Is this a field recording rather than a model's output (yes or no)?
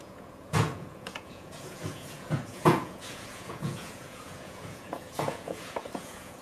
no